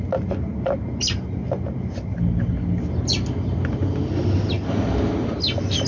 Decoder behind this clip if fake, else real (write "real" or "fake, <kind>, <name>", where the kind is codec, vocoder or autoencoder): real